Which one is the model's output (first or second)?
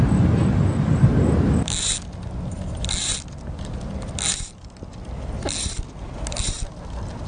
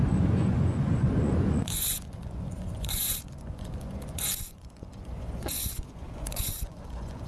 second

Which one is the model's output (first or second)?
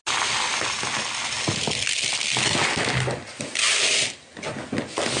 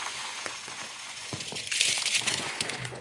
second